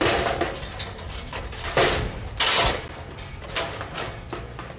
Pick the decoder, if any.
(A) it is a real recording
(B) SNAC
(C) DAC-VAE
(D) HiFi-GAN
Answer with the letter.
A